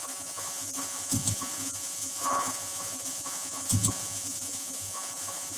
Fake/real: fake